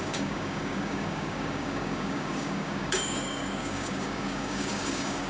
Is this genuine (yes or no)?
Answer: no